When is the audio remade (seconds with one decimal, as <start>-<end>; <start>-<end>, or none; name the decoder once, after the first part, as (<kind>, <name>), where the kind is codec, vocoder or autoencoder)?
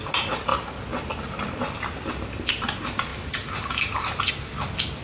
none